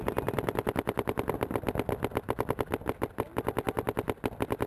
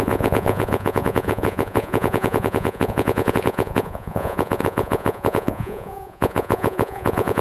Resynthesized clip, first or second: second